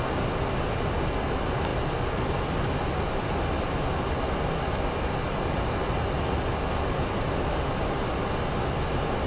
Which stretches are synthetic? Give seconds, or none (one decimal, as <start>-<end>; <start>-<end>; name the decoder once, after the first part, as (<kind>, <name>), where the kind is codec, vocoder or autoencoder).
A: none